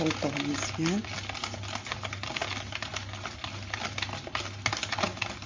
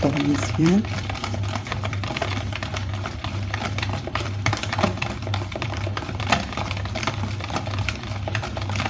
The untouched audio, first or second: first